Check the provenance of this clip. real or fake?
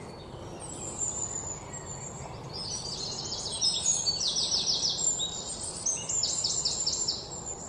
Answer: real